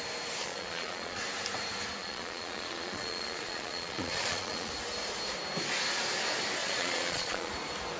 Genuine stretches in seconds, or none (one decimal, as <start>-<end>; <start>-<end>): 0.0-0.4; 1.2-2.0; 4.7-6.6; 7.5-8.0

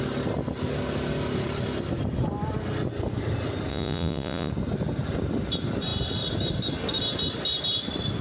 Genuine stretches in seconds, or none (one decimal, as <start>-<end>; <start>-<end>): 0.0-3.7; 4.5-8.2

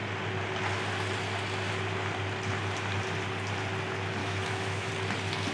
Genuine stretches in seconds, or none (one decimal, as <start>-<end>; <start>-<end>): 0.0-4.2; 4.9-5.5

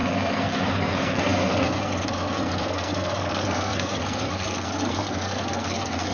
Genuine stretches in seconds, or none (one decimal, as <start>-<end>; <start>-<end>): none

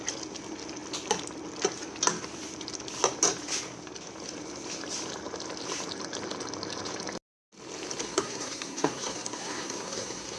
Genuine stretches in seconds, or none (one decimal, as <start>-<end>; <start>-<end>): 0.0-8.0

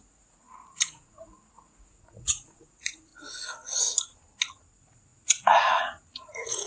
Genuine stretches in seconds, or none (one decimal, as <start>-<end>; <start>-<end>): 3.1-4.5

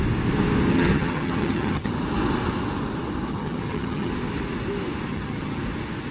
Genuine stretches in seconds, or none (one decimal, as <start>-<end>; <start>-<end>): 0.0-0.7; 1.9-3.3; 4.1-5.1; 5.6-6.1

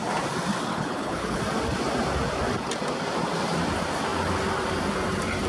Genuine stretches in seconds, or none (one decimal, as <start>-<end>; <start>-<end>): 0.0-0.7; 1.4-5.5